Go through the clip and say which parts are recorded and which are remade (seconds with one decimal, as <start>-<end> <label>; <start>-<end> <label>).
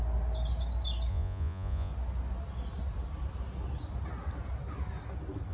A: 0.0-1.1 recorded; 1.1-1.9 remade; 1.9-5.5 recorded